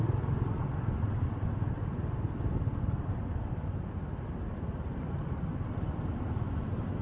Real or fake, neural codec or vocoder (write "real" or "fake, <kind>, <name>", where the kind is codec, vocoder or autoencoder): real